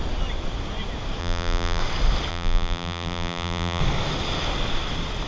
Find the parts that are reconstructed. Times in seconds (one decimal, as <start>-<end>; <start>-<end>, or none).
1.2-1.8; 2.3-3.8